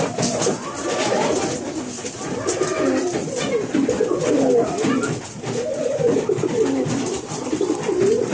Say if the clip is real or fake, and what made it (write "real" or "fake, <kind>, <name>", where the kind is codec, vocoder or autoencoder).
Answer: real